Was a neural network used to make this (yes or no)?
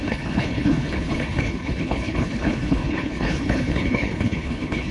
yes